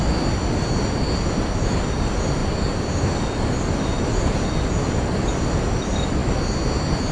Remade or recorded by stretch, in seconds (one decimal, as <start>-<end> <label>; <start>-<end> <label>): 0.0-7.1 recorded